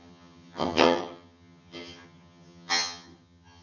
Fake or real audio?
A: fake